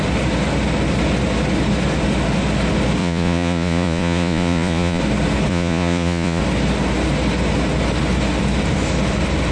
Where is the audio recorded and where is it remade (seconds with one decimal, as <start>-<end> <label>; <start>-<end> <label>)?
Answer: 0.0-3.0 recorded; 3.0-5.0 remade; 5.0-5.5 recorded; 5.5-6.4 remade; 6.4-9.5 recorded